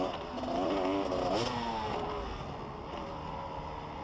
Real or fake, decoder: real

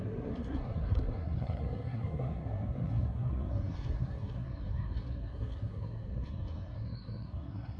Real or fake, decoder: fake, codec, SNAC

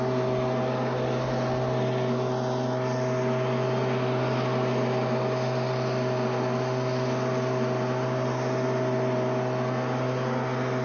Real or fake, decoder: real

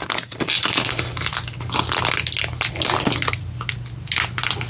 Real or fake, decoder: real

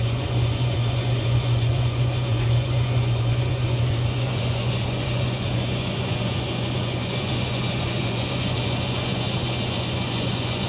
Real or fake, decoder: fake, vocoder, Vocos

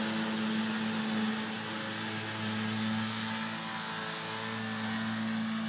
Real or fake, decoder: real